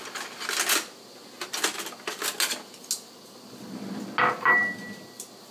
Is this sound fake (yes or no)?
no